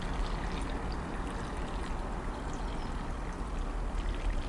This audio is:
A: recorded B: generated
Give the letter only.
A